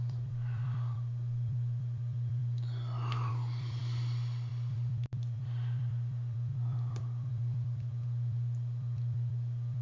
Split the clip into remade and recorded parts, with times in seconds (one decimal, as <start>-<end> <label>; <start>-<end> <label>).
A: 0.0-2.4 remade; 2.4-3.3 recorded; 3.3-3.8 remade; 3.8-4.5 recorded; 4.5-9.8 remade